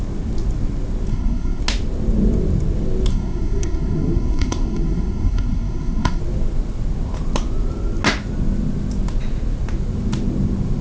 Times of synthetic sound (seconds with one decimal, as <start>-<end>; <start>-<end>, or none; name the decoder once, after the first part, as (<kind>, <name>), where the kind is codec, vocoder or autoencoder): 1.1-1.6 (codec, SNAC); 3.1-6.2